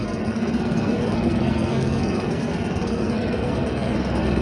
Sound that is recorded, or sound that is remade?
remade